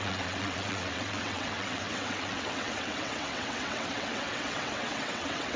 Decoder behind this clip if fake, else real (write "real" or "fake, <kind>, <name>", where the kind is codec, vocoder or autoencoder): fake, vocoder, WaveNeXt